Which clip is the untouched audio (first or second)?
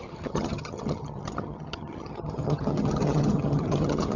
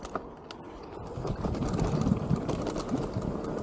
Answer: second